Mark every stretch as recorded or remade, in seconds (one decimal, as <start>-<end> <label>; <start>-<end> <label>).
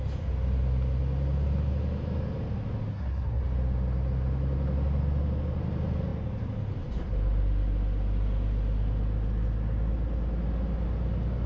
0.0-2.9 recorded; 2.9-3.4 remade; 3.4-11.5 recorded